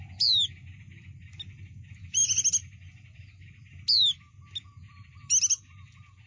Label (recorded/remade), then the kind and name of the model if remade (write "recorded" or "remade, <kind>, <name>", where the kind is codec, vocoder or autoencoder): recorded